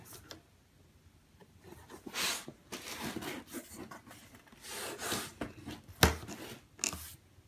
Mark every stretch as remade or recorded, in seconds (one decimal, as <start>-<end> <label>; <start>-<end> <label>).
0.0-7.5 recorded